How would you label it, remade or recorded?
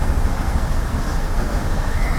remade